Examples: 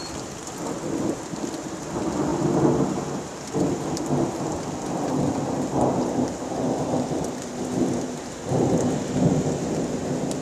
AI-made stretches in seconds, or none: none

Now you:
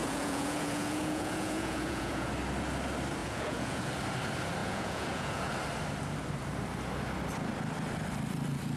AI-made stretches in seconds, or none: 0.0-2.3 (vocoder, Vocos); 3.2-3.9; 4.6-5.5